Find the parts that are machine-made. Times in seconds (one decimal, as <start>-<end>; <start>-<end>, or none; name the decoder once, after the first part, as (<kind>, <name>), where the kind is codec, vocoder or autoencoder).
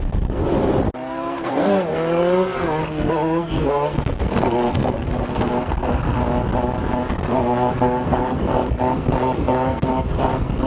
0.0-0.4 (codec, SNAC); 0.9-6.2; 7.1-10.7